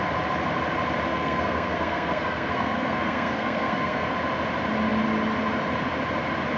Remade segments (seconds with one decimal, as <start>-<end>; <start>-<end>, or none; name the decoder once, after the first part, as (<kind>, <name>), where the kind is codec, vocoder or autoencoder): 1.1-4.1 (codec, SNAC)